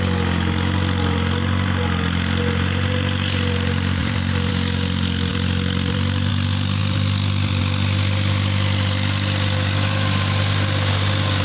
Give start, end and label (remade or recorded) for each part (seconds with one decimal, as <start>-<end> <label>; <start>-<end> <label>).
0.0-4.0 recorded; 4.0-4.5 remade; 4.5-5.3 recorded; 5.3-6.3 remade; 6.3-6.8 recorded; 6.8-7.6 remade; 7.6-11.4 recorded